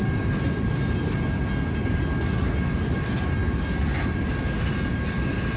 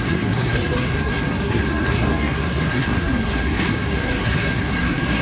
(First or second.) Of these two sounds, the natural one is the first